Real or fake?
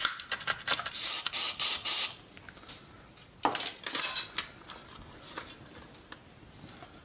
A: real